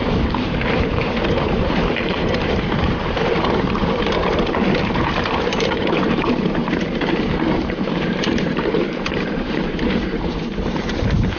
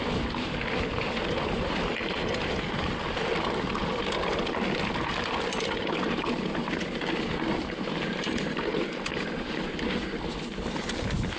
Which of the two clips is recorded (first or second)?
second